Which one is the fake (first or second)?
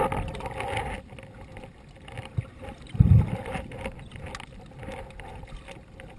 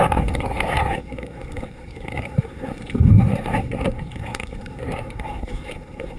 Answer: second